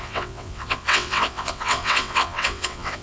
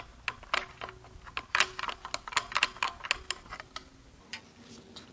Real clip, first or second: second